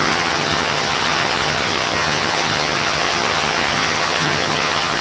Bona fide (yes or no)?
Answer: no